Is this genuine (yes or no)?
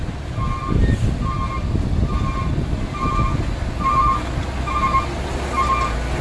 yes